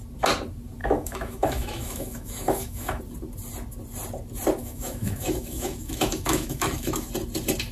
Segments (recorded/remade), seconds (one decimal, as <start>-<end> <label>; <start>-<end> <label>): 0.0-0.8 recorded; 0.8-3.0 remade; 3.0-4.6 recorded; 4.6-7.1 remade; 7.1-7.7 recorded